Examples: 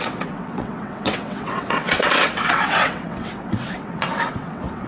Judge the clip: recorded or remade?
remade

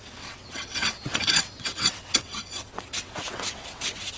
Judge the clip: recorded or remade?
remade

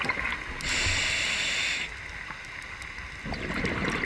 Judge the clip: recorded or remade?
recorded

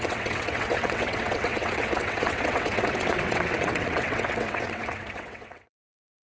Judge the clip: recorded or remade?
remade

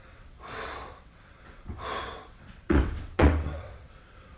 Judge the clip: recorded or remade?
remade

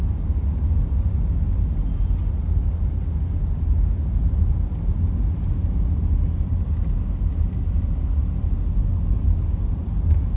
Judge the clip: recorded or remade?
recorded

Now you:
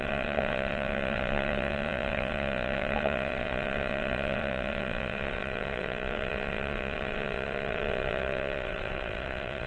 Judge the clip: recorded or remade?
remade